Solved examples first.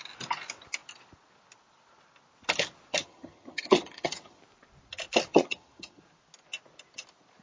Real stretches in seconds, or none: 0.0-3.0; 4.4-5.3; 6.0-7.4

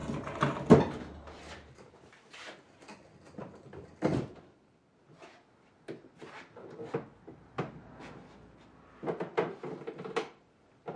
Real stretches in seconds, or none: 0.0-11.0

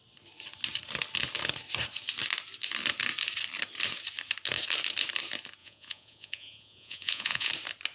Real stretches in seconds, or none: 0.0-5.6; 7.5-7.9

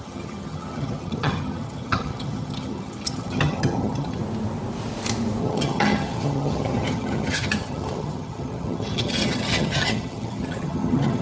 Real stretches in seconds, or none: 4.2-5.4